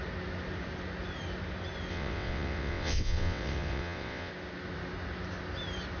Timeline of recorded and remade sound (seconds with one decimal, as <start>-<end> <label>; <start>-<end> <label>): 0.0-1.9 recorded; 1.9-4.3 remade; 4.3-6.0 recorded